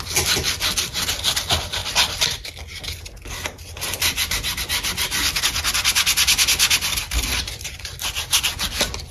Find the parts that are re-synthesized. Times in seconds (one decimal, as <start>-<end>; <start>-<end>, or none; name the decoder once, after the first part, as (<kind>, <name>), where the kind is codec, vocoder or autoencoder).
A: none